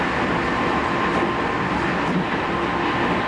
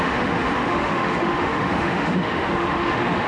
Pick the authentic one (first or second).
first